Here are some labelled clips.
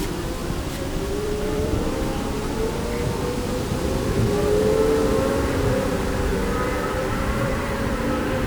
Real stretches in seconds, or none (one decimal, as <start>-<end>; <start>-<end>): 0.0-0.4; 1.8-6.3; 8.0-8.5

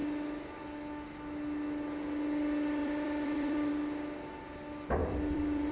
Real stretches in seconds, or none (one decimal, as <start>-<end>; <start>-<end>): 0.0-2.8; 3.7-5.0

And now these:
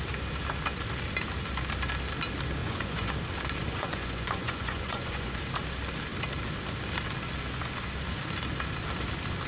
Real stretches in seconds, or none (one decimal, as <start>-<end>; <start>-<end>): 0.0-2.6; 3.1-3.6; 5.4-9.5

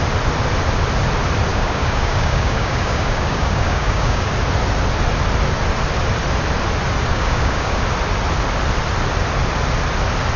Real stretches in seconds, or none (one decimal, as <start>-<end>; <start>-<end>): 0.0-1.5; 4.3-7.1; 7.8-10.4